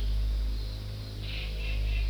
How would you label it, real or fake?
real